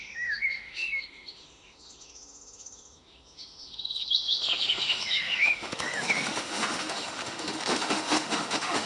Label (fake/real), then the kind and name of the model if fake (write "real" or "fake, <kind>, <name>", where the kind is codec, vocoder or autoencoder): fake, autoencoder, DAC-VAE